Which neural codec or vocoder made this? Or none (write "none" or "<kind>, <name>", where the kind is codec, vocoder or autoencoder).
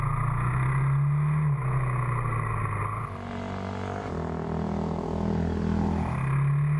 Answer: none